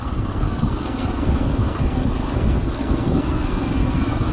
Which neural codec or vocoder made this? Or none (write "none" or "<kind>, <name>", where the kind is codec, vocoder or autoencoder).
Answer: codec, SNAC